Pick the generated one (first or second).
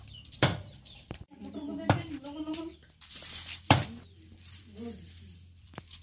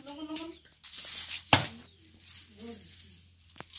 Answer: first